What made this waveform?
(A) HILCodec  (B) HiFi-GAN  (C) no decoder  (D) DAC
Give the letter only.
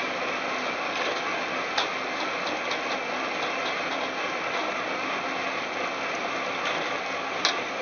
C